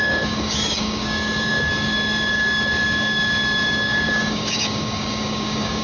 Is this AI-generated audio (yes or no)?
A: yes